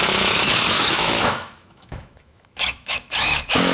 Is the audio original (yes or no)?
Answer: no